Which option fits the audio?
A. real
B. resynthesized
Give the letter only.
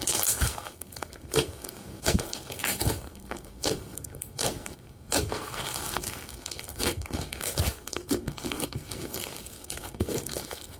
B